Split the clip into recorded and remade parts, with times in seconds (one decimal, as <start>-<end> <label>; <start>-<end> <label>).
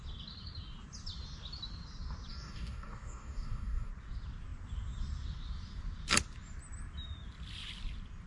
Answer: 0.0-2.3 recorded; 2.3-3.9 remade; 3.9-8.3 recorded